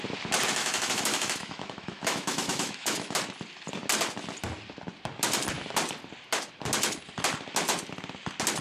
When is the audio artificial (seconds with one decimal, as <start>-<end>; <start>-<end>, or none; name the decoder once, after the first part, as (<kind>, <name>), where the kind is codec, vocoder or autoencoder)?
0.6-3.2 (autoencoder, DAC-VAE)